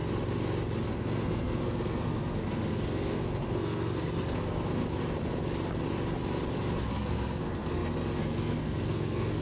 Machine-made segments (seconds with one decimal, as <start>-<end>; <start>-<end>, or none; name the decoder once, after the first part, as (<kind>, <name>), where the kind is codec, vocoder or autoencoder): 0.9-4.8 (codec, SNAC); 6.9-9.4